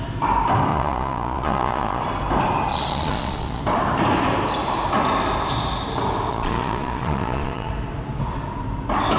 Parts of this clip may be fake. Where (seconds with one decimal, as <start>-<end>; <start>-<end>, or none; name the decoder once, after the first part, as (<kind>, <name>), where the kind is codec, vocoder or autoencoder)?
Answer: 0.7-2.0 (vocoder, Vocos); 2.7-3.6; 6.3-7.7

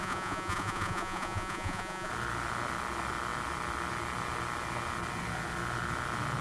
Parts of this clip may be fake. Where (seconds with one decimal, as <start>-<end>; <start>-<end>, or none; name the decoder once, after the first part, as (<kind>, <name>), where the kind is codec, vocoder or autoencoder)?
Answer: 0.0-2.1 (vocoder, Vocos)

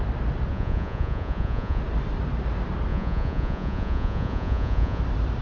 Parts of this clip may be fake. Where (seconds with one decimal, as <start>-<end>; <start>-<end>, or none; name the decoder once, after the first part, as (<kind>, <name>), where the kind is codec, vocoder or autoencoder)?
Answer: 0.5-1.8 (vocoder, Vocos); 2.9-5.0

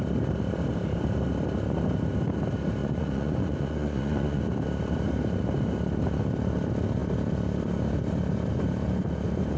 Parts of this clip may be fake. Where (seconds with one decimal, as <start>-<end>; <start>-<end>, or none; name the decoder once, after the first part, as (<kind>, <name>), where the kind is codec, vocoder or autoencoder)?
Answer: 2.8-4.4 (vocoder, Vocos)

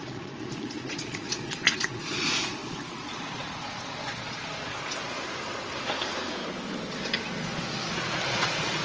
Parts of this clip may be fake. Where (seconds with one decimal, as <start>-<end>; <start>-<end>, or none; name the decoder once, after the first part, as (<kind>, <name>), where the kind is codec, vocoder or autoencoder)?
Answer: 0.0-5.2 (vocoder, Vocos); 8.3-8.8

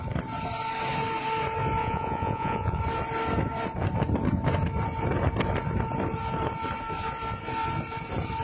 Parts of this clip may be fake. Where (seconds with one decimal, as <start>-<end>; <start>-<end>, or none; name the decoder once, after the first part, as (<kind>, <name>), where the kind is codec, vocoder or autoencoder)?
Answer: 1.8-2.8 (vocoder, Vocos)

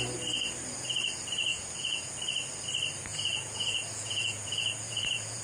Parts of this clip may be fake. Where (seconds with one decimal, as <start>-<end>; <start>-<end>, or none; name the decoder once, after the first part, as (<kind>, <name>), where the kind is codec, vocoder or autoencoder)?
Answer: 1.5-2.1 (vocoder, Vocos); 3.1-5.4